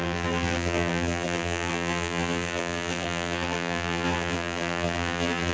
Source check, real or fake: fake